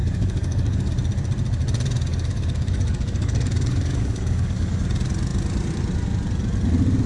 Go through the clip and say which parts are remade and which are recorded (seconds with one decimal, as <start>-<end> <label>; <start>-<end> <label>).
0.0-0.9 remade; 0.9-2.1 recorded; 2.1-4.8 remade; 4.8-7.1 recorded